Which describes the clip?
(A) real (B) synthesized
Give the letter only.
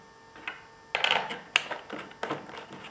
A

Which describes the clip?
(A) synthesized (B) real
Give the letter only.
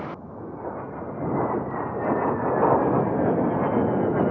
B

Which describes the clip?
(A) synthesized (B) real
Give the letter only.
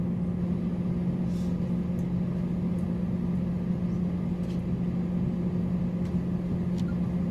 B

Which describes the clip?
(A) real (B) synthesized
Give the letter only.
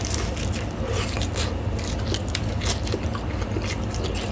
A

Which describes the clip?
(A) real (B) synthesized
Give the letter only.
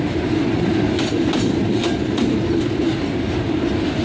A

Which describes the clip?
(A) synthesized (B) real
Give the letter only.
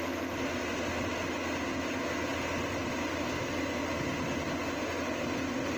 B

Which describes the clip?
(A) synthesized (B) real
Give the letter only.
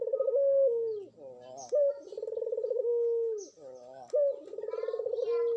B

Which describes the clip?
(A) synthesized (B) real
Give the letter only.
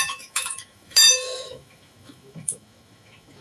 A